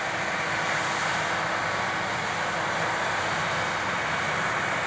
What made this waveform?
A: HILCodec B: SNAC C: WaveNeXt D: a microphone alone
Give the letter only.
D